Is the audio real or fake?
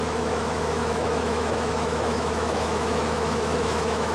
fake